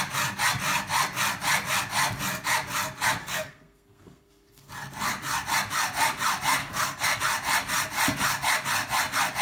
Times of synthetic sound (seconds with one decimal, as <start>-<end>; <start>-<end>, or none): 3.2-4.7; 6.6-7.2